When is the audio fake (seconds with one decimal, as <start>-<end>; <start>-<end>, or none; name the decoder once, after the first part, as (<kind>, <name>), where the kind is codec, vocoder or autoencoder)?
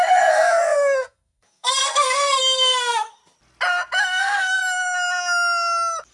0.0-3.2 (codec, SNAC); 4.0-4.6